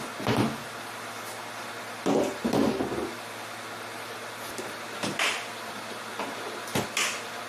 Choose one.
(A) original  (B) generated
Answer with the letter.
A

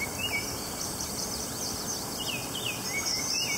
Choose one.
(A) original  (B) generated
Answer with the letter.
A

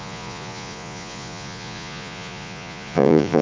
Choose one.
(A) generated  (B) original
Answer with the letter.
A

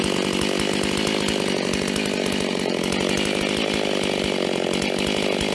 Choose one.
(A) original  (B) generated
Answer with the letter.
A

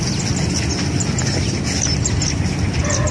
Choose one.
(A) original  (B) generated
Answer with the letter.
A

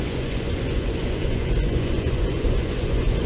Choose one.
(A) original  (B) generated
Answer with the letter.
B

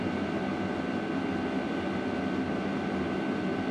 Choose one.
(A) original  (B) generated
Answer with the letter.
A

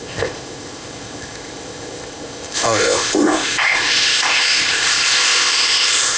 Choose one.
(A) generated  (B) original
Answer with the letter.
A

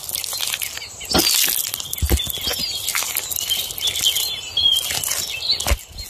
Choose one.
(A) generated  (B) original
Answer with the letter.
B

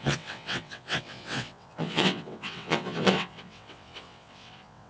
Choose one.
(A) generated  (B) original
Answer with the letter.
A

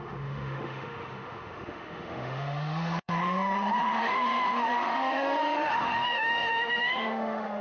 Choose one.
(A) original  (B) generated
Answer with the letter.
B